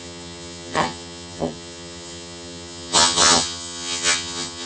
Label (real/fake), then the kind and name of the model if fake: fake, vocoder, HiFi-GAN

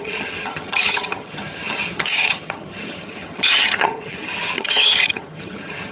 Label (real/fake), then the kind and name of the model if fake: fake, vocoder, HiFi-GAN